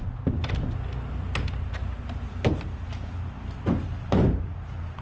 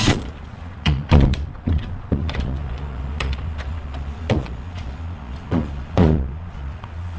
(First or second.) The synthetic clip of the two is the second